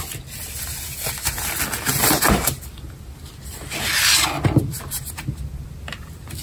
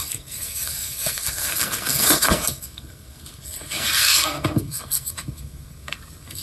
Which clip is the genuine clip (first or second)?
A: first